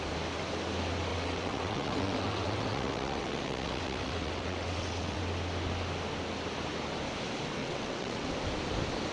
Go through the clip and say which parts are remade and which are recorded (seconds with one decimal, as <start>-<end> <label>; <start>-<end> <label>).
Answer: 0.0-1.1 recorded; 1.1-5.2 remade; 5.2-7.6 recorded; 7.6-8.3 remade; 8.3-9.1 recorded

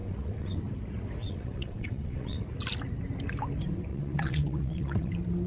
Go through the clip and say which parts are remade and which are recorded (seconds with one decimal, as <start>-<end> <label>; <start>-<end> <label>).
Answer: 0.0-0.6 remade; 0.6-1.2 recorded; 1.2-2.4 remade; 2.4-3.9 recorded; 3.9-5.1 remade; 5.1-5.5 recorded

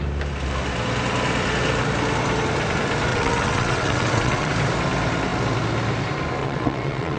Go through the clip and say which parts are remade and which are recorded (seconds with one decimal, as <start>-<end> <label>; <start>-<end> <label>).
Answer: 0.0-3.1 recorded; 3.1-4.5 remade; 4.5-6.4 recorded; 6.4-7.2 remade

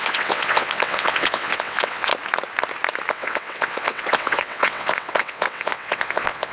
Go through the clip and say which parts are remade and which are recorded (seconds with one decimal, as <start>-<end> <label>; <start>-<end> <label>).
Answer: 0.0-2.1 remade; 2.1-3.1 recorded; 3.1-6.5 remade

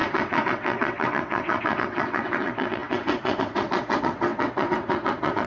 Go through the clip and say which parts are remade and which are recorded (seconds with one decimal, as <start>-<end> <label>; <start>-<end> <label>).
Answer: 0.0-5.5 remade